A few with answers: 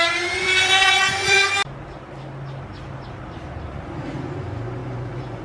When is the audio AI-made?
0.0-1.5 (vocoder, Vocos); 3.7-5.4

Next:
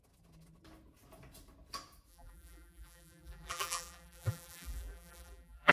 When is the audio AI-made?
2.1-5.7 (vocoder, BigVGAN v2)